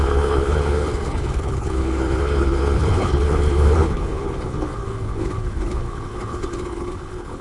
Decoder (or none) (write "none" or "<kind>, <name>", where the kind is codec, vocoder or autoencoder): codec, HILCodec